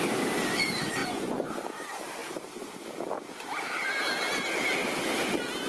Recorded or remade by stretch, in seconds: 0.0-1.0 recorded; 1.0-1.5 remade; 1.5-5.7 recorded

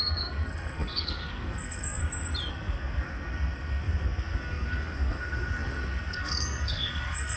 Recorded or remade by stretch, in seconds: 0.0-2.0 remade; 2.0-2.5 recorded; 2.5-7.4 remade

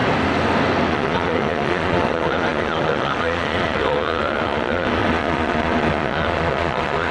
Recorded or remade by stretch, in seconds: 0.0-0.9 recorded; 0.9-7.1 remade

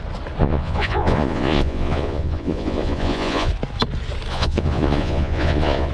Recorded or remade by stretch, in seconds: 0.0-0.4 recorded; 0.4-3.5 remade; 3.5-4.3 recorded; 4.3-5.9 remade

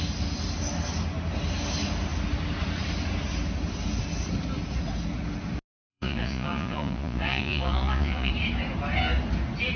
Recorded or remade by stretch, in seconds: 0.0-5.9 recorded; 5.9-8.3 remade; 8.3-9.8 recorded